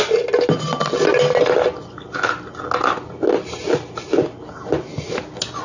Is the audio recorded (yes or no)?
yes